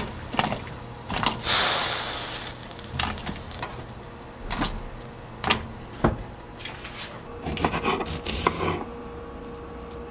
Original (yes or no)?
yes